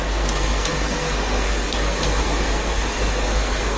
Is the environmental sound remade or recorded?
remade